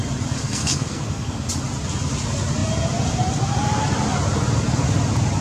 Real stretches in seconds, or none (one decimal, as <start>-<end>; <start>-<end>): 0.0-0.4; 1.5-5.4